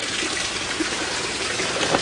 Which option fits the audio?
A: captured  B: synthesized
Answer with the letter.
A